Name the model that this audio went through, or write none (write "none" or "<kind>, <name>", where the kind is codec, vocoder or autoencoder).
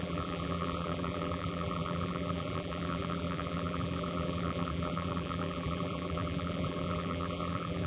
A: vocoder, BigVGAN v2